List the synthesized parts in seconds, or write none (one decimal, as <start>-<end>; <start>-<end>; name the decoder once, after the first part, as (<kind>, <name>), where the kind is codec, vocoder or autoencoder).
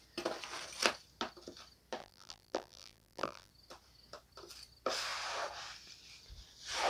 2.0-3.5 (vocoder, BigVGAN v2)